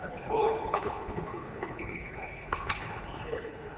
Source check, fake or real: fake